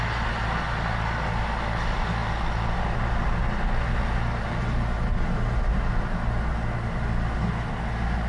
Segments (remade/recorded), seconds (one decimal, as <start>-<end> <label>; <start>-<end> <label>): 0.0-8.3 recorded